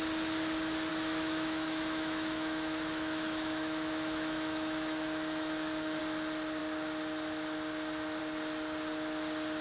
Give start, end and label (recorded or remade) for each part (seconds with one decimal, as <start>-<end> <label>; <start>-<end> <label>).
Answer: 0.0-0.9 recorded; 0.9-6.0 remade; 6.0-9.6 recorded